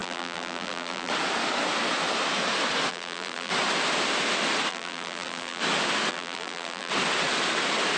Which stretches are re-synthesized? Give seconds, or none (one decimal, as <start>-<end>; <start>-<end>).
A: 0.0-1.1; 2.9-3.5; 4.7-5.6; 6.1-6.9